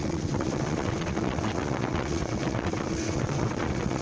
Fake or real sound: fake